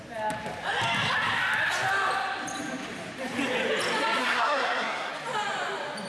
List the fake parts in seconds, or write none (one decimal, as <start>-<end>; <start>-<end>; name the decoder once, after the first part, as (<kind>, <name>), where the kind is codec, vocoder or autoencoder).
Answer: 4.2-5.1 (codec, SNAC)